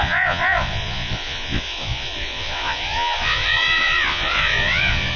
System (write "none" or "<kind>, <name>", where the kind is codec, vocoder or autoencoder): vocoder, Vocos